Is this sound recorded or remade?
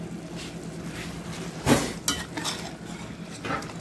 recorded